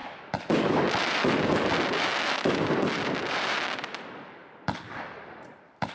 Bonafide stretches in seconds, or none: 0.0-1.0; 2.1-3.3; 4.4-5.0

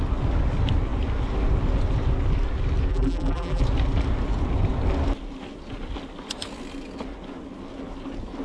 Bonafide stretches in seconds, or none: 0.0-2.9; 3.6-8.4

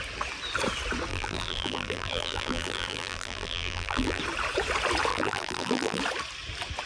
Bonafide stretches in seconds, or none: 0.0-1.1; 4.2-5.1; 6.0-6.9

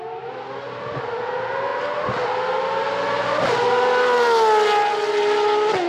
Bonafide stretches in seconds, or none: 0.0-5.9

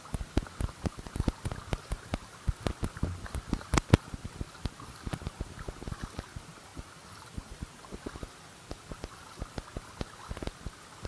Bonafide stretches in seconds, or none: 0.0-6.7; 7.6-11.1